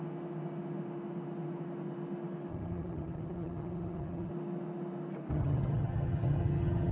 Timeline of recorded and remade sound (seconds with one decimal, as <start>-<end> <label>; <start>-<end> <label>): 0.0-2.5 recorded; 2.5-4.3 remade; 4.3-5.3 recorded; 5.3-6.9 remade